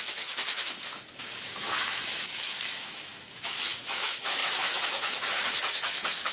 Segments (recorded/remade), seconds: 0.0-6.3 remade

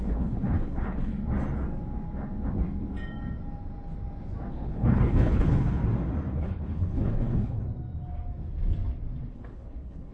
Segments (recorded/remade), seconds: 0.0-1.1 remade; 1.1-4.5 recorded; 4.5-5.8 remade; 5.8-6.4 recorded; 6.4-7.6 remade; 7.6-9.3 recorded; 9.3-10.1 remade

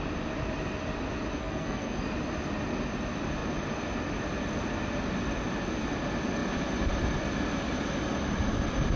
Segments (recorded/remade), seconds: 0.0-1.3 recorded; 1.3-2.0 remade; 2.0-9.0 recorded

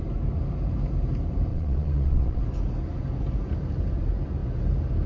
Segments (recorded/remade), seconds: 0.0-1.5 recorded; 1.5-2.4 remade; 2.4-5.1 recorded

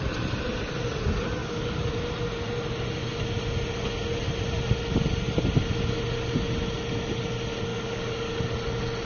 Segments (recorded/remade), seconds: 0.0-1.4 recorded; 1.4-1.9 remade; 1.9-7.7 recorded; 7.7-8.4 remade; 8.4-9.1 recorded

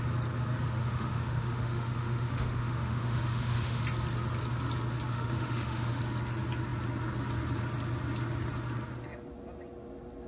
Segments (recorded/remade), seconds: 0.0-0.8 recorded; 0.8-3.8 remade; 3.8-5.1 recorded; 5.1-6.0 remade; 6.0-10.3 recorded

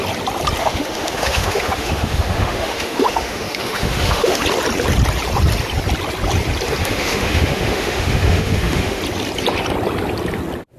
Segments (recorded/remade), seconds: 0.0-0.6 recorded; 0.6-4.4 remade; 4.4-6.8 recorded; 6.8-9.0 remade; 9.0-10.8 recorded

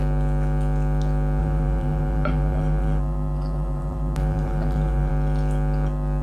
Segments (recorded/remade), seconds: 0.0-1.4 recorded; 1.4-5.1 remade; 5.1-6.2 recorded